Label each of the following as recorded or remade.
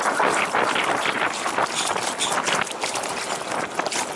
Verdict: recorded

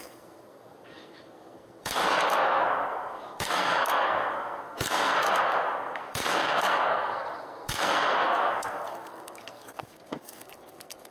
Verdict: remade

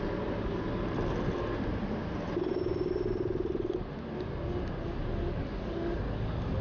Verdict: recorded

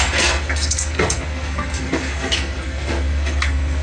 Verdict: remade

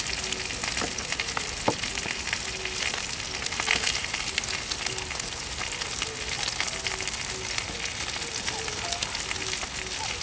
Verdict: recorded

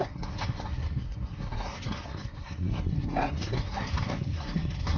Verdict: remade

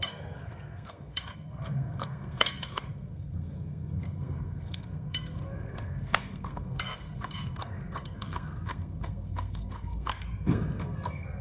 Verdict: remade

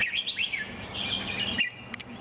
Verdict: recorded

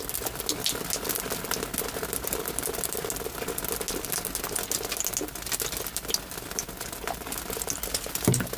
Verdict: recorded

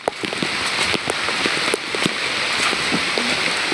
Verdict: recorded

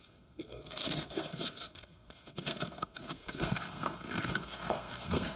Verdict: remade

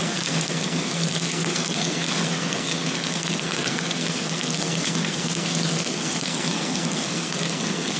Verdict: remade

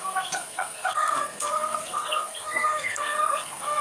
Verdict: remade